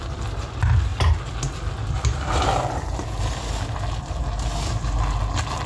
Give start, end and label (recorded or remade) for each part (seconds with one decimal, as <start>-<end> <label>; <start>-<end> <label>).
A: 0.0-5.7 recorded